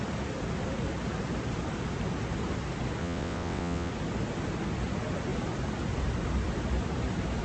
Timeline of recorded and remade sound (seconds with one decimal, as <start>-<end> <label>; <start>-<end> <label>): 0.0-3.0 recorded; 3.0-3.9 remade; 3.9-7.4 recorded